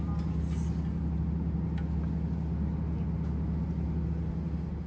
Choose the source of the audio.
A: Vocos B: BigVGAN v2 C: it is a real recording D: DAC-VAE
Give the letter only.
C